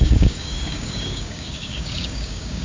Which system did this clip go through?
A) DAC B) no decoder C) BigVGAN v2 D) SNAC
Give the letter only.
A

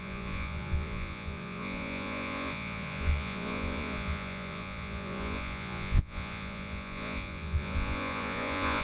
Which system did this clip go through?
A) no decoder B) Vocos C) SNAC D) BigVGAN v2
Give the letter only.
B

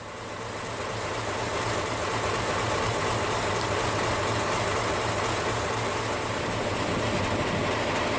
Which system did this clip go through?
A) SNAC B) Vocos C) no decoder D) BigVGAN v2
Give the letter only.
C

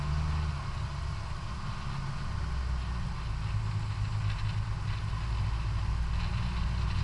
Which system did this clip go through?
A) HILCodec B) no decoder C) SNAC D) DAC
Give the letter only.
B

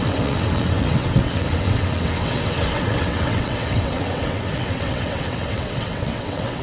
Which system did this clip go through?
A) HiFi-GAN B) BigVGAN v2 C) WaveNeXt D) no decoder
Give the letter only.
C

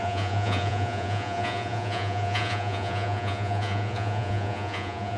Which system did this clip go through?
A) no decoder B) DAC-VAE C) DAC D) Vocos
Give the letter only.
D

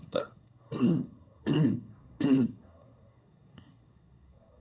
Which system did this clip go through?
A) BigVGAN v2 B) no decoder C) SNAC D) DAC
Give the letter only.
C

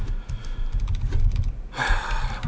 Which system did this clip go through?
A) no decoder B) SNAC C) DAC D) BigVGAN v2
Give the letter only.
A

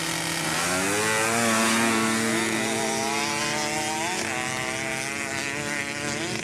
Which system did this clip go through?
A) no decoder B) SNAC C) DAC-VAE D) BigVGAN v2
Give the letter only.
A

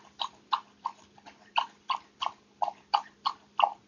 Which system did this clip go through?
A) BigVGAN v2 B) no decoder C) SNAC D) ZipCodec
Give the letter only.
B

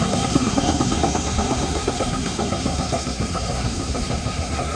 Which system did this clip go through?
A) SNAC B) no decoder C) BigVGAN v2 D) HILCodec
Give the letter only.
A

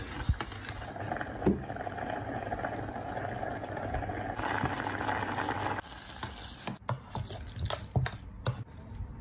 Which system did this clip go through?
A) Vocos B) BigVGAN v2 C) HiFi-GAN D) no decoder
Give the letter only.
D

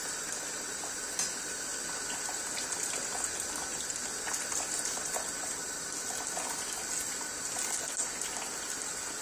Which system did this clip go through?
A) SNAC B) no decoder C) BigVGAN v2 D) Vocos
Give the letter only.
B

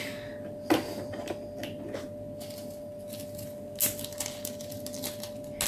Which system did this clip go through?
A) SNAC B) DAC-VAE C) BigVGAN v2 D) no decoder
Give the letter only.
D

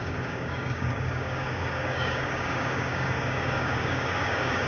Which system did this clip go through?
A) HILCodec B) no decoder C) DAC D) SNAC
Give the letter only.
C